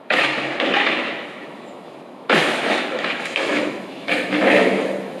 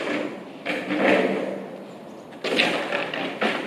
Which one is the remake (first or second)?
first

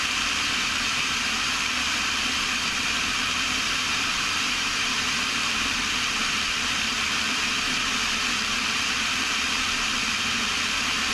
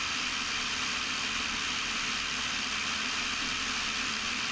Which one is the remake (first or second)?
first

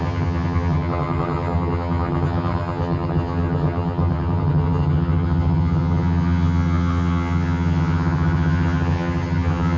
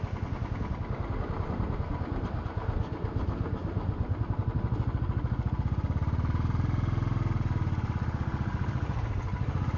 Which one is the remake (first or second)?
first